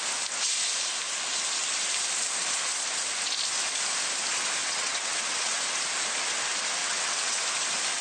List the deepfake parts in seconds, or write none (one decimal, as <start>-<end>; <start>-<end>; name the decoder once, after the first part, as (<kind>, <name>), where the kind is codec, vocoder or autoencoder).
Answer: 4.6-5.6 (vocoder, WaveNeXt); 6.8-7.4